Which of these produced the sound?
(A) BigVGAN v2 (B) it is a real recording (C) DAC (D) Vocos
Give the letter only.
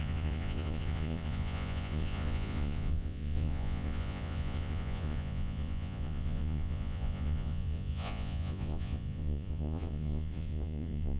D